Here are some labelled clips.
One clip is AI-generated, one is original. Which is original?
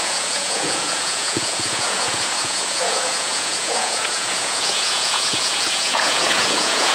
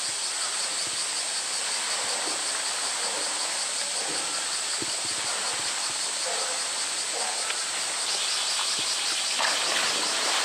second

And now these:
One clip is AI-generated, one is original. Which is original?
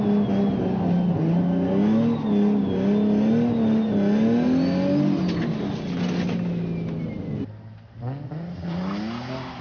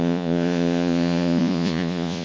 first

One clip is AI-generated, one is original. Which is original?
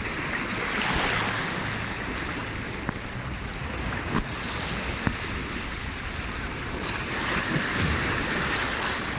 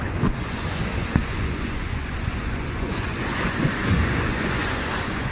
first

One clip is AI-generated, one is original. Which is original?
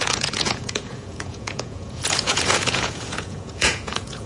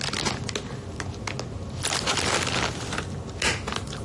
second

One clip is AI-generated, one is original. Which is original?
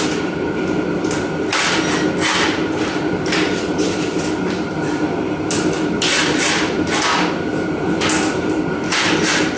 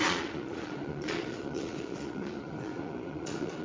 first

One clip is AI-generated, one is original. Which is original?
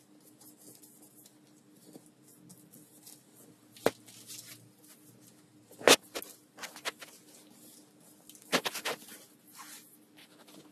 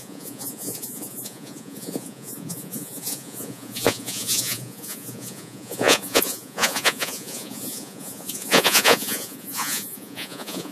first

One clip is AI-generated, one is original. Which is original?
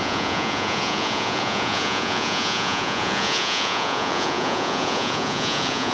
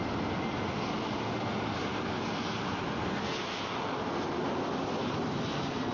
second